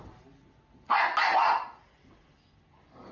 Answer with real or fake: real